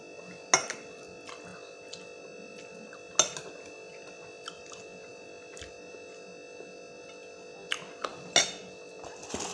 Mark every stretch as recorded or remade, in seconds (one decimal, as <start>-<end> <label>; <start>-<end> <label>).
0.0-9.5 recorded